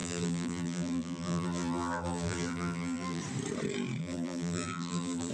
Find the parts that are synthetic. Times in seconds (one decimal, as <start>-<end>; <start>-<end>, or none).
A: 0.0-3.2; 4.0-5.3